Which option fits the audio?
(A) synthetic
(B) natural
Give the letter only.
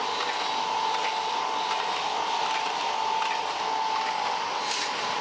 B